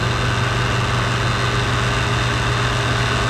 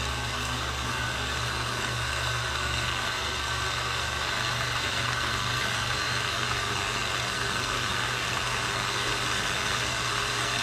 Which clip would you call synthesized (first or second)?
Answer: second